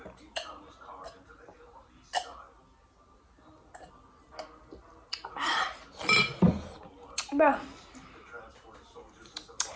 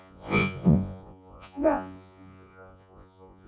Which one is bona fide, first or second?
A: first